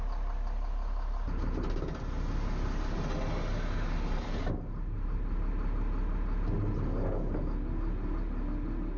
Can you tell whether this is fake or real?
real